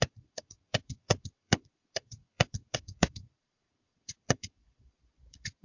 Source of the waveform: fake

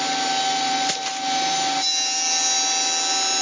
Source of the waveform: real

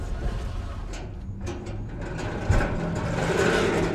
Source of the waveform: real